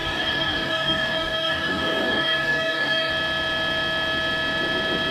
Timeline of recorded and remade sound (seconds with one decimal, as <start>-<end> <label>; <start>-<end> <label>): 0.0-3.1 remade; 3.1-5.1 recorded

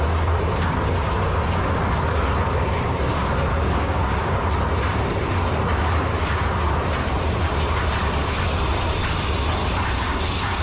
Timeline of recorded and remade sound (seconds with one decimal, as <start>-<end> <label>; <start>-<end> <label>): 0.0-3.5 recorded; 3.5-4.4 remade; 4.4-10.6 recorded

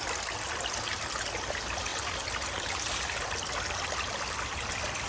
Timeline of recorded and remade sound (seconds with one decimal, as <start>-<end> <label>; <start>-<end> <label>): 0.0-5.1 recorded

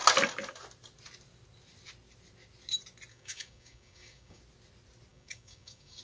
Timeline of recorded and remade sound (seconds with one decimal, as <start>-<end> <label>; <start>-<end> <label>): 0.0-3.1 recorded; 3.1-4.4 remade; 4.4-5.1 recorded; 5.1-6.0 remade

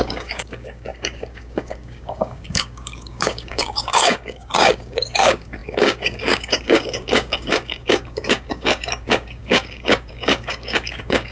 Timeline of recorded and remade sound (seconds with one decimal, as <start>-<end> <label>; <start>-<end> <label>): 0.0-11.3 remade